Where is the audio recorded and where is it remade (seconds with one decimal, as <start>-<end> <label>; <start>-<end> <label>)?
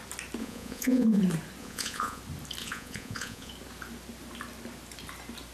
0.0-0.4 recorded; 0.4-1.2 remade; 1.2-1.6 recorded; 1.6-2.2 remade; 2.2-2.6 recorded; 2.6-3.5 remade; 3.5-5.5 recorded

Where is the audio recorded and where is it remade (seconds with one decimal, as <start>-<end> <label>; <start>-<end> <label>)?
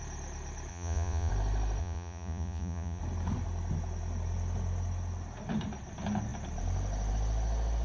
0.0-0.7 recorded; 0.7-1.3 remade; 1.3-1.8 recorded; 1.8-3.0 remade; 3.0-7.8 recorded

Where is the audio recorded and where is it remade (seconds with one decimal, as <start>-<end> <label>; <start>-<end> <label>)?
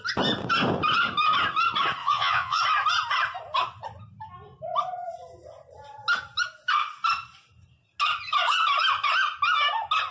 0.0-2.0 recorded; 2.0-2.6 remade; 2.6-10.1 recorded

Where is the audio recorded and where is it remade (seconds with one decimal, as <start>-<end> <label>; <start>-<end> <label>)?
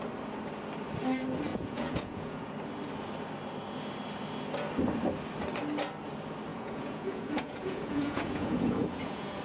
0.0-1.5 recorded; 1.5-2.5 remade; 2.5-6.5 recorded; 6.5-9.4 remade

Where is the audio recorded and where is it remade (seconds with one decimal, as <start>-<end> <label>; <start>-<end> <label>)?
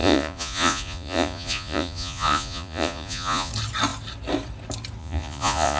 0.0-3.5 remade; 3.5-5.0 recorded; 5.0-5.8 remade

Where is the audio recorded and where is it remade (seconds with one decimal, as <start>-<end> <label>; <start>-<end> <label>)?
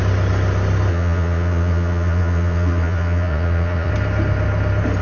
0.0-0.9 recorded; 0.9-3.9 remade; 3.9-5.0 recorded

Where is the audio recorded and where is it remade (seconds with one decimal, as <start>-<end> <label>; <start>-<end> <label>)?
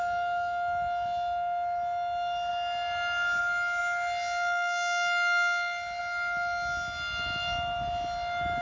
0.0-8.6 recorded